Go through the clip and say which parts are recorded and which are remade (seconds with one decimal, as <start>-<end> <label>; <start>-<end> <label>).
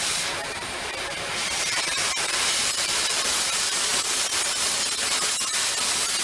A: 0.0-3.9 remade; 3.9-5.8 recorded; 5.8-6.2 remade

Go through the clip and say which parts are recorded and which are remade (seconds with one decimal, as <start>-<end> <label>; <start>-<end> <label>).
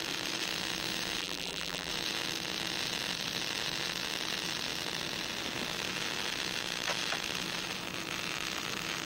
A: 0.0-1.2 recorded; 1.2-1.9 remade; 1.9-9.0 recorded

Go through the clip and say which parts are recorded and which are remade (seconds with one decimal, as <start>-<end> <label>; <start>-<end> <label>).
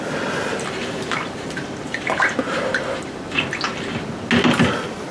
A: 0.0-0.5 recorded; 0.5-3.6 remade; 3.6-5.1 recorded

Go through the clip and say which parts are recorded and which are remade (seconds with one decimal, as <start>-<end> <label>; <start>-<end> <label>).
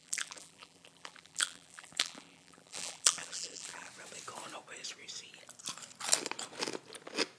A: 0.0-3.9 remade; 3.9-7.4 recorded